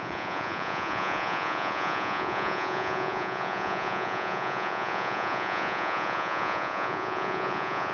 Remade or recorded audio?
remade